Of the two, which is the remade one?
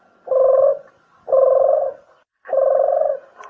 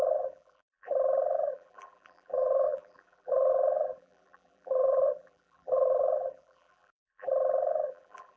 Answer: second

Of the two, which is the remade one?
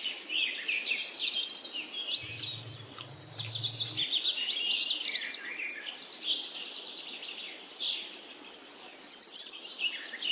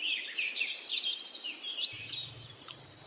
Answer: second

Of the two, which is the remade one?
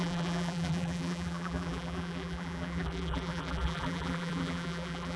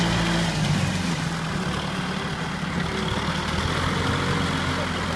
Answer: first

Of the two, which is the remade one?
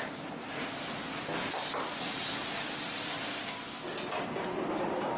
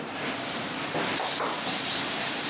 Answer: second